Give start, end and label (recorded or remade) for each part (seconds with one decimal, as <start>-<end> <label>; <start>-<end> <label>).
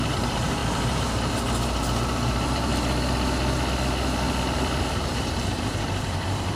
0.0-2.7 remade; 2.7-4.9 recorded; 4.9-6.6 remade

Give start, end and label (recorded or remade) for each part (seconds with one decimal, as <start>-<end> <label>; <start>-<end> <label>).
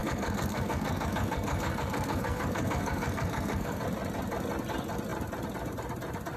0.0-3.8 remade; 3.8-6.4 recorded